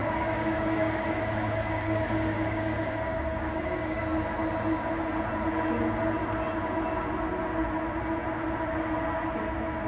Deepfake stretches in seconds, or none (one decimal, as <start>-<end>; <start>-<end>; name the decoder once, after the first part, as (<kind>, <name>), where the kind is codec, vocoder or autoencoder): 0.0-4.0 (codec, DAC)